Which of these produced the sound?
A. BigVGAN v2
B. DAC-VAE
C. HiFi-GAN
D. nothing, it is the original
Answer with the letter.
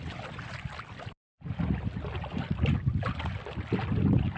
D